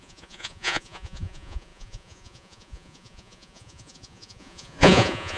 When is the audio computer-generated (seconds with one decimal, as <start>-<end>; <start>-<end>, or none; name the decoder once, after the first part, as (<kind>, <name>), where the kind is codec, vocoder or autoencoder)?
0.0-5.4 (vocoder, Vocos)